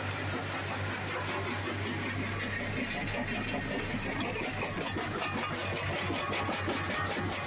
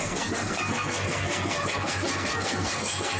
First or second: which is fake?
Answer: second